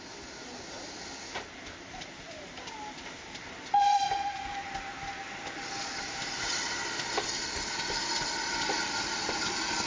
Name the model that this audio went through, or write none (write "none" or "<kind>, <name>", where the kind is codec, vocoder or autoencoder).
none